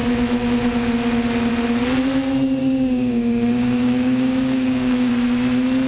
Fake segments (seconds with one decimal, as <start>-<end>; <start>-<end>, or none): 2.6-5.1